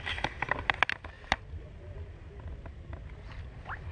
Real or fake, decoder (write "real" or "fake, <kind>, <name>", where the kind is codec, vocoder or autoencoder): real